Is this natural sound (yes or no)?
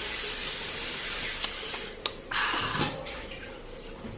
yes